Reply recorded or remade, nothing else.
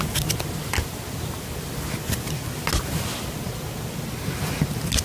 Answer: recorded